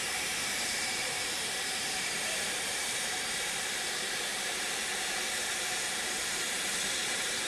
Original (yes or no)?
no